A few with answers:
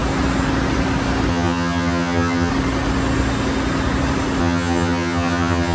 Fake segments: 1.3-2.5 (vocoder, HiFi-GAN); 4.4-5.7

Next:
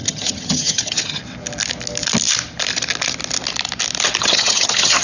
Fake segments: 0.0-1.2 (vocoder, HiFi-GAN); 4.2-5.0

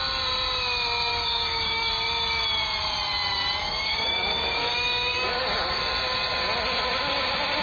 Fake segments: 1.1-1.9 (codec, DAC); 3.6-5.8